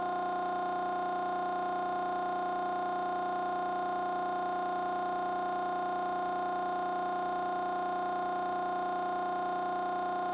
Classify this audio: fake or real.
real